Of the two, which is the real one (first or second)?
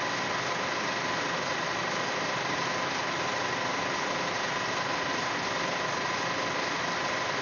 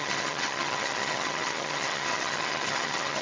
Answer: first